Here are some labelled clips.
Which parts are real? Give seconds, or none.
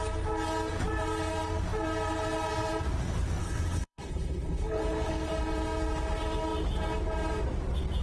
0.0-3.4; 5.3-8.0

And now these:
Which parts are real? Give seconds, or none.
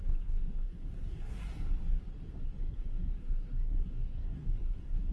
1.4-2.4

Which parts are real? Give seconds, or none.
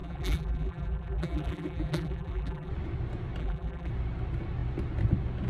2.7-3.4; 3.9-5.5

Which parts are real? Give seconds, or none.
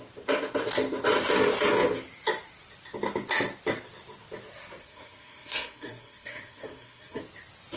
0.0-4.8; 7.2-7.8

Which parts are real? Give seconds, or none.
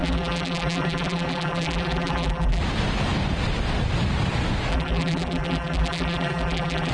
2.6-4.7